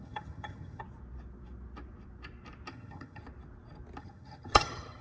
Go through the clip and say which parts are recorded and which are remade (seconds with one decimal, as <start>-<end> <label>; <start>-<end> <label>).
0.0-0.8 remade; 0.8-2.7 recorded; 2.7-3.2 remade; 3.2-4.0 recorded; 4.0-5.0 remade